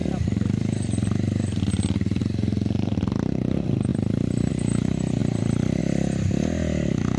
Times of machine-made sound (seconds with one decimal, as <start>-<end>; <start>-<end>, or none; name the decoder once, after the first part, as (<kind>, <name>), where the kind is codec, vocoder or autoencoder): 0.0-2.2 (vocoder, BigVGAN v2); 3.9-4.5; 5.2-5.8